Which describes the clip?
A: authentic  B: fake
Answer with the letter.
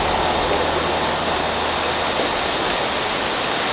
A